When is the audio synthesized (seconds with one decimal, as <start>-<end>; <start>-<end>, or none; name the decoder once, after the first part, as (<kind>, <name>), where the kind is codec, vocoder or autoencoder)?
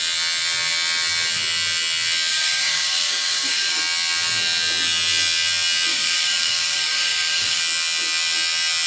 2.3-3.8 (codec, DAC); 5.9-7.6